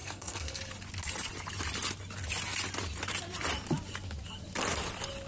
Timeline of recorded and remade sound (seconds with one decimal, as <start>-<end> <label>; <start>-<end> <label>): 0.0-0.6 remade; 0.6-5.3 recorded